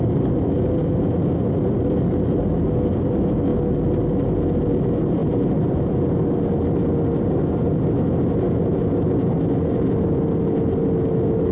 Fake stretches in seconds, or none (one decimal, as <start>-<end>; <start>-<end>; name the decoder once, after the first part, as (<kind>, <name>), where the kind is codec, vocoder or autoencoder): none